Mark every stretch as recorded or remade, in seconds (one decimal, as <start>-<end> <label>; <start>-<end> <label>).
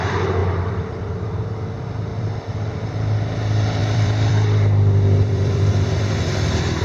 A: 0.0-2.1 recorded; 2.1-2.7 remade; 2.7-3.8 recorded; 3.8-6.1 remade; 6.1-6.8 recorded